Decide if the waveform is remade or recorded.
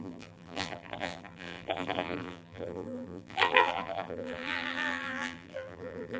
remade